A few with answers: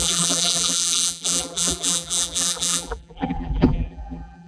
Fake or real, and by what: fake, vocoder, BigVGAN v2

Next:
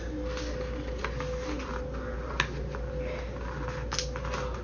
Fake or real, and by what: real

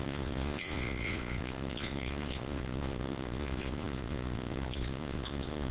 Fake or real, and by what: fake, vocoder, Vocos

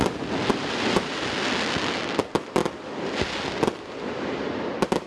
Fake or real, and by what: real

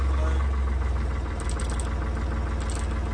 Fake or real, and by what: real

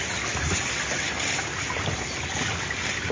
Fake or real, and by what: real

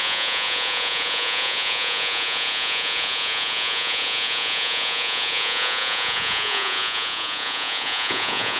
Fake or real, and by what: fake, vocoder, Vocos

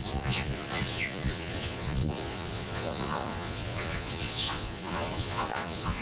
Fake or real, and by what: fake, vocoder, Vocos